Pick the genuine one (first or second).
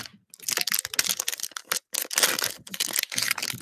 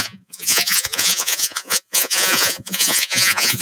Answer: first